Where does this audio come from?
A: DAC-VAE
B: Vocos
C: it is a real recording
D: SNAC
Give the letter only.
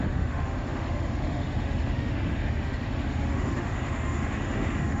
A